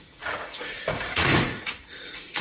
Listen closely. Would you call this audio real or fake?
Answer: fake